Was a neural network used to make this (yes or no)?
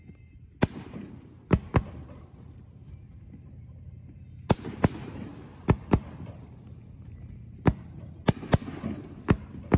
no